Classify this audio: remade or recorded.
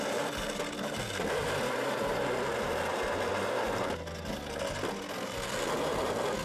recorded